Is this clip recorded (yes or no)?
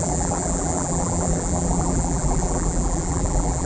no